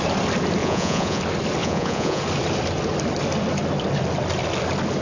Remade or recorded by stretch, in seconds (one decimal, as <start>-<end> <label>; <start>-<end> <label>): 0.0-0.6 recorded; 0.6-1.2 remade; 1.2-1.6 recorded; 1.6-2.2 remade; 2.2-5.0 recorded